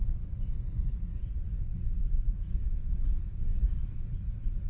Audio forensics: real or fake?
fake